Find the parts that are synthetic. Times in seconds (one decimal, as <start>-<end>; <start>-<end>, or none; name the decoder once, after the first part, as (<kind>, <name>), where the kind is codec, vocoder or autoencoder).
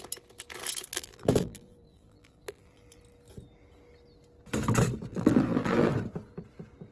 0.9-3.0 (vocoder, BigVGAN v2); 5.1-5.9